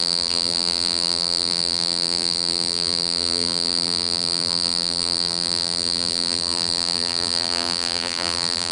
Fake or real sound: fake